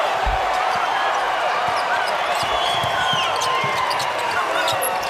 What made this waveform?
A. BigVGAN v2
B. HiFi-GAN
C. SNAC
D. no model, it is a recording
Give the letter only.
A